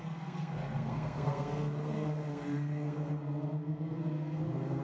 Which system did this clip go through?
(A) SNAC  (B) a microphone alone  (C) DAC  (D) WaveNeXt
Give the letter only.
A